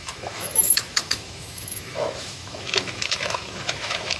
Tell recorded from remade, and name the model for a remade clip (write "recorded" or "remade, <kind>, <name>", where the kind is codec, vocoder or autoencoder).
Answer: remade, autoencoder, DAC-VAE